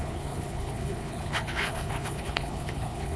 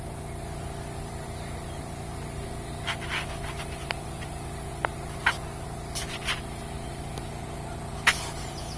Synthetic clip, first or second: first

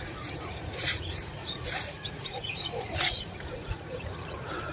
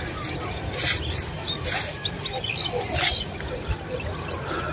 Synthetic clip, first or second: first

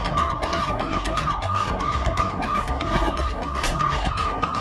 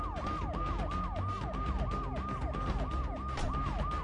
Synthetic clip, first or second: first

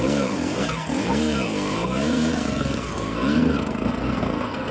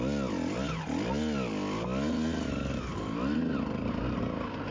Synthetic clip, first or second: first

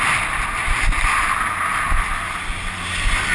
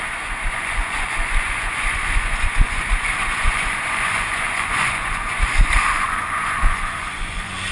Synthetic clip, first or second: second